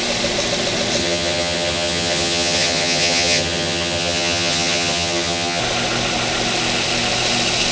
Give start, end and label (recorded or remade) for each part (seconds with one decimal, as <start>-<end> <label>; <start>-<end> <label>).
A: 0.0-1.0 recorded; 1.0-5.6 remade; 5.6-7.7 recorded